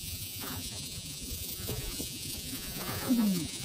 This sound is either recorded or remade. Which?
remade